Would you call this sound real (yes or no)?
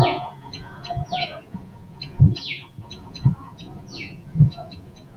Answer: no